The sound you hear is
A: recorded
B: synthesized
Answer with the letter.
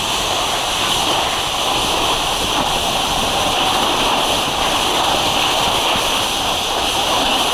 A